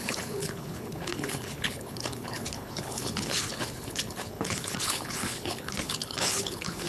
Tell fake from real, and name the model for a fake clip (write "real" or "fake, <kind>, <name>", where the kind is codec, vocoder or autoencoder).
fake, codec, HILCodec